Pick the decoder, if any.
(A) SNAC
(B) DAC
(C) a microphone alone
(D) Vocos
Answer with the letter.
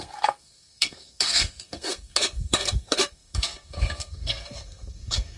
A